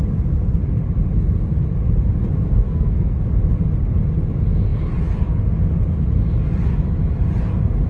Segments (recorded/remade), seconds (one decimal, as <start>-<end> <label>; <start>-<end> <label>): 0.0-2.6 recorded; 2.6-3.2 remade; 3.2-7.9 recorded